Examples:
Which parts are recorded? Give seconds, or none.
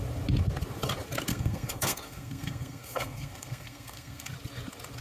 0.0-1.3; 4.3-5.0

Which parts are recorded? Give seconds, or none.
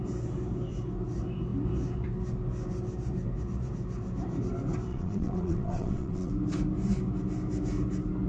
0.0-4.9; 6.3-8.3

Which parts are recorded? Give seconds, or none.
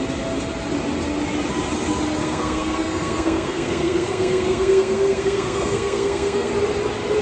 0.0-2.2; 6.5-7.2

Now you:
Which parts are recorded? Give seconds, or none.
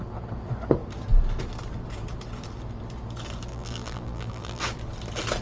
0.0-3.5; 4.6-5.4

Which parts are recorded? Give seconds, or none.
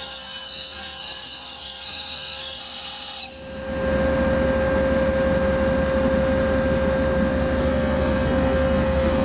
2.6-7.6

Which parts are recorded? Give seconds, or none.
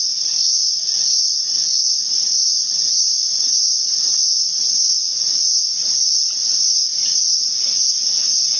0.0-8.6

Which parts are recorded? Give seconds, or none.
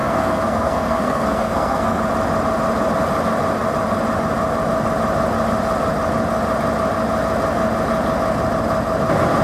2.0-9.4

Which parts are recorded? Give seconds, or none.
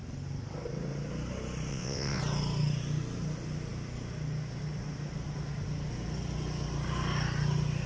0.0-1.7; 2.2-7.9